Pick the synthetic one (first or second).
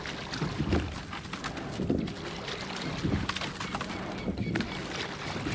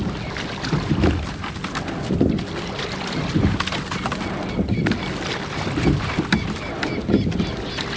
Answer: second